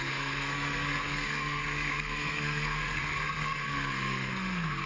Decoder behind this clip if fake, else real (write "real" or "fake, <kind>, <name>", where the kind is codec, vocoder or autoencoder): fake, codec, SNAC